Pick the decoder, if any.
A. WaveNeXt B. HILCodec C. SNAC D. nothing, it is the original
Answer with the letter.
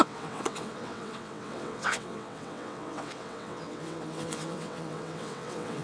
A